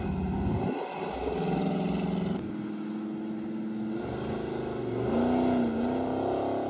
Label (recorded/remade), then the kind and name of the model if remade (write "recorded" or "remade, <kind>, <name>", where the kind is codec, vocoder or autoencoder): recorded